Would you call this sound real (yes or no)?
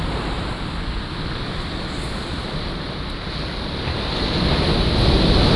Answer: yes